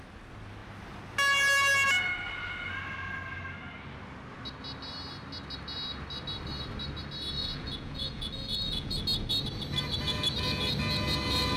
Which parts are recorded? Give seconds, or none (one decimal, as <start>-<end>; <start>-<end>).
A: 0.0-7.4; 9.0-11.6